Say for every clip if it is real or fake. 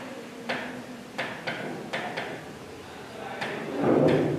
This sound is real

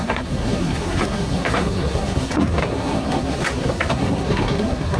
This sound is fake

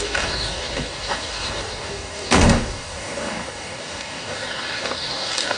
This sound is fake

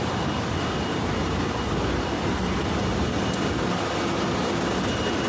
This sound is real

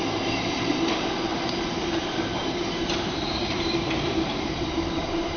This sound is fake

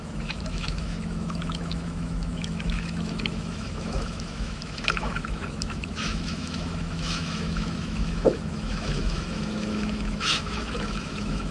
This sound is fake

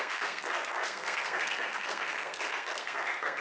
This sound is fake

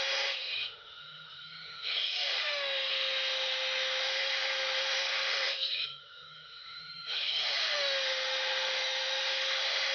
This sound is fake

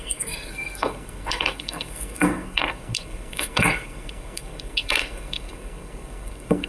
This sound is fake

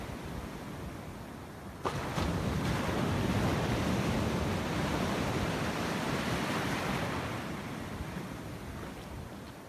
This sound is real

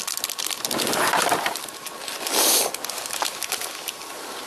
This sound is real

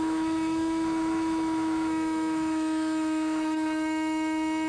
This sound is fake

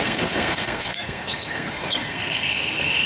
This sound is fake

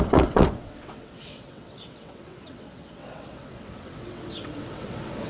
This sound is fake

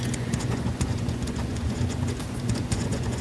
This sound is fake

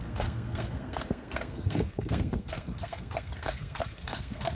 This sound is fake